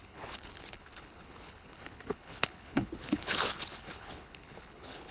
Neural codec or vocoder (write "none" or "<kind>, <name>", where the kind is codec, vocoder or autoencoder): codec, HILCodec